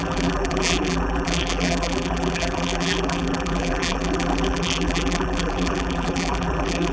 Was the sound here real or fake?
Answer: fake